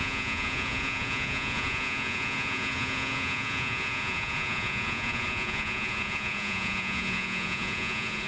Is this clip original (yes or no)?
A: no